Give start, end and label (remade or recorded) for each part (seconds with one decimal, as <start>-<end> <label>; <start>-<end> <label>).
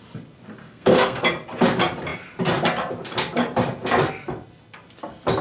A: 0.0-0.6 recorded; 0.6-1.2 remade; 1.2-5.4 recorded